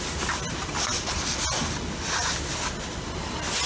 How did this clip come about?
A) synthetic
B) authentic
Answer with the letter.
B